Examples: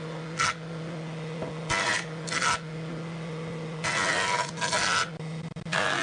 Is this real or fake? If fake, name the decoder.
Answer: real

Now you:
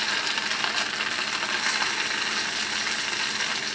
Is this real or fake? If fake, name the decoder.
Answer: real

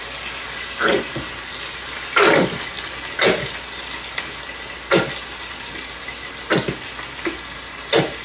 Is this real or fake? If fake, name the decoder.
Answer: real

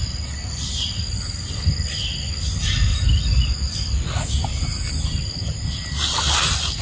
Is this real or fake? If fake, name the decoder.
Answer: real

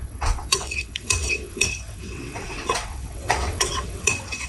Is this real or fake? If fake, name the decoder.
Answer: fake, vocoder, WaveNeXt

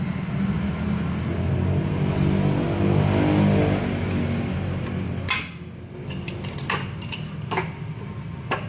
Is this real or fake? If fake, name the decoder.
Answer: real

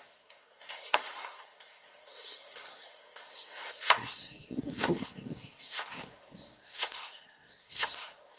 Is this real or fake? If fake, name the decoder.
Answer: fake, codec, SNAC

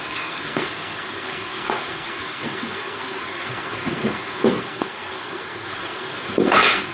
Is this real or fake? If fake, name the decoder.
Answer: fake, codec, SNAC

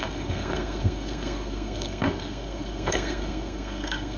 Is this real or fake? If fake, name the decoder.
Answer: fake, codec, SNAC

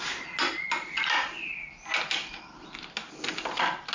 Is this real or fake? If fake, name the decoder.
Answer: real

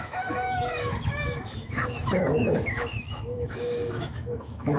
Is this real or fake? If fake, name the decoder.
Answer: fake, autoencoder, DAC-VAE